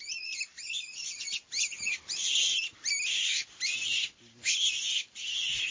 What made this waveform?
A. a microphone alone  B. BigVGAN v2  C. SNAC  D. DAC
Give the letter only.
B